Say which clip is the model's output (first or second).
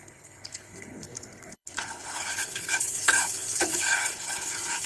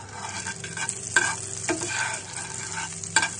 first